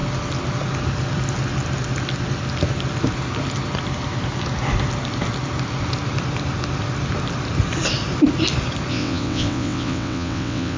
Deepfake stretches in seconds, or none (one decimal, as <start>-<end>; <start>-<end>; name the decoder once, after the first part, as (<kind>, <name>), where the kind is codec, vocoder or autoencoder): 8.9-10.8 (vocoder, WaveNeXt)